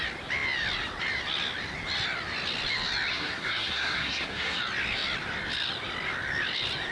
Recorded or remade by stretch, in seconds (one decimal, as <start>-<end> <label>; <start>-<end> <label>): 0.0-3.1 recorded; 3.1-4.6 remade; 4.6-6.9 recorded